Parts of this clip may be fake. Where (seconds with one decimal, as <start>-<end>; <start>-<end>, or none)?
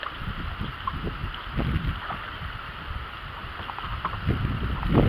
3.4-4.3